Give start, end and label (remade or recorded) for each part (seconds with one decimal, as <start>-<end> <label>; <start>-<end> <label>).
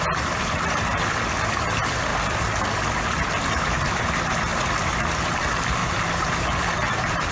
0.0-2.1 remade; 2.1-4.0 recorded; 4.0-4.5 remade; 4.5-5.3 recorded; 5.3-5.8 remade; 5.8-6.3 recorded; 6.3-7.3 remade